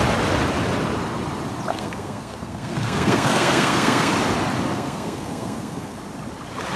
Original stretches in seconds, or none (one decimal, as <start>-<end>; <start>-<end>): 0.0-1.7; 4.1-4.7; 6.0-6.8

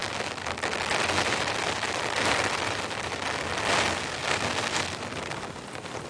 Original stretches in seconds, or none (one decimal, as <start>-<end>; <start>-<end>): 0.0-6.1